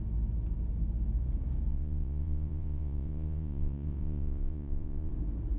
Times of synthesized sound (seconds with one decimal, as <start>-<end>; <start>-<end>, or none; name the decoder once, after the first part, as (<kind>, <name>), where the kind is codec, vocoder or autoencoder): 1.7-5.1 (vocoder, Vocos)